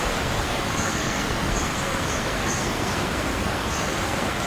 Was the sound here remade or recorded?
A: remade